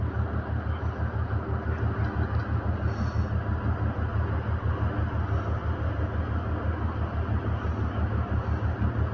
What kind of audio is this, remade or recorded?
recorded